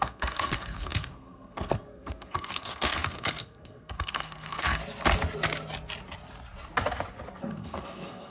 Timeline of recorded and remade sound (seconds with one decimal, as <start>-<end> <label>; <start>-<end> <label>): 0.0-4.8 remade; 4.8-7.4 recorded; 7.4-8.3 remade